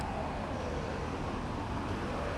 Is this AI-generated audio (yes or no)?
no